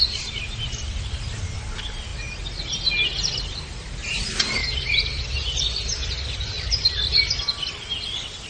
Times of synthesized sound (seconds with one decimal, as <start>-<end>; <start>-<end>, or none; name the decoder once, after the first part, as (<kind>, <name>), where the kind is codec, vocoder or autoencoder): none